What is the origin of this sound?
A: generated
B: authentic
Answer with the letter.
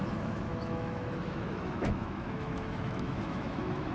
A